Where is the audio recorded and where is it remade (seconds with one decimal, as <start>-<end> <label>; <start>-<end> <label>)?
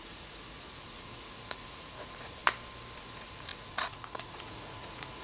0.0-2.4 remade; 2.4-3.0 recorded; 3.0-5.2 remade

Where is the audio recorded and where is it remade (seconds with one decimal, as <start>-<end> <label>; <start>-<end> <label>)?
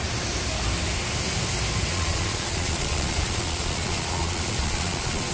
0.0-1.9 recorded; 1.9-5.3 remade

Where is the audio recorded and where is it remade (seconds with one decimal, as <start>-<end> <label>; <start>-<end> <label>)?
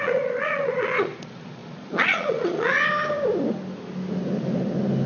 0.0-2.8 remade; 2.8-5.1 recorded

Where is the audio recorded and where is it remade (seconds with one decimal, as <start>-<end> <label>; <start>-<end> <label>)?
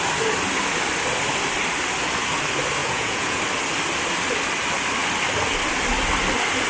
0.0-2.8 recorded; 2.8-3.4 remade; 3.4-6.7 recorded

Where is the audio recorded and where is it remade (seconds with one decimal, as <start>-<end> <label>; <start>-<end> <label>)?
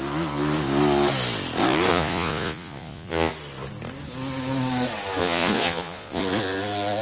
0.0-1.9 recorded; 1.9-3.3 remade; 3.3-5.2 recorded; 5.2-6.2 remade; 6.2-7.0 recorded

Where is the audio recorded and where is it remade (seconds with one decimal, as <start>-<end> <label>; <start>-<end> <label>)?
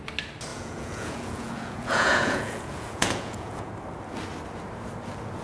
0.0-0.5 recorded; 0.5-3.7 remade; 3.7-5.4 recorded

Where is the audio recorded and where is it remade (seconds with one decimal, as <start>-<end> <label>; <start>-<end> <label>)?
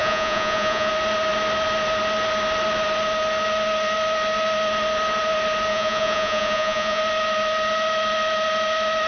0.0-0.9 remade; 0.9-5.7 recorded; 5.7-7.0 remade; 7.0-9.1 recorded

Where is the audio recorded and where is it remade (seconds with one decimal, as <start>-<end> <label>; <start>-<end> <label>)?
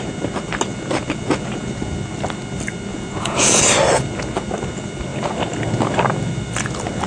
0.0-0.7 recorded; 0.7-1.7 remade; 1.7-2.9 recorded; 2.9-3.6 remade; 3.6-7.1 recorded